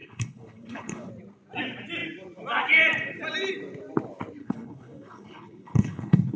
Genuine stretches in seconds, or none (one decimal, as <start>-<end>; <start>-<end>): 1.1-4.4